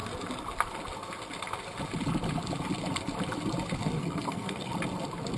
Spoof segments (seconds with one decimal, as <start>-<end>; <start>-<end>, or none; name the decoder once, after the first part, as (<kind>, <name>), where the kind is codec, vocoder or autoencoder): 4.0-4.7 (codec, SNAC)